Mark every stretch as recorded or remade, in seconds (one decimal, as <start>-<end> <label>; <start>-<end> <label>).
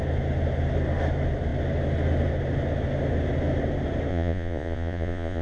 0.0-4.1 recorded; 4.1-5.4 remade